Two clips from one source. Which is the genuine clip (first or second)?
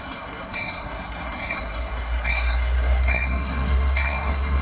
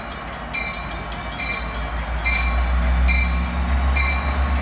second